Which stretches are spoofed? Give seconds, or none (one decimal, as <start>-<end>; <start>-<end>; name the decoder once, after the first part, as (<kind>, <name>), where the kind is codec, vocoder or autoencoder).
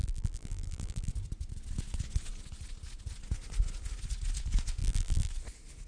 0.0-1.1 (vocoder, BigVGAN v2); 4.8-5.3